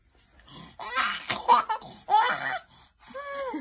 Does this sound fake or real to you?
real